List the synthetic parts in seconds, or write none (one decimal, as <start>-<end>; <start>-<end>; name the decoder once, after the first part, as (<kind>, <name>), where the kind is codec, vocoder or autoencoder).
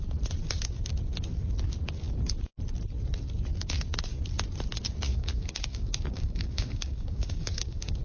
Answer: 5.1-8.0 (codec, DAC)